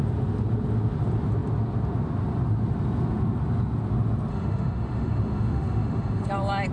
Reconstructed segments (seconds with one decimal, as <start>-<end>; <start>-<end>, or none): 4.3-6.3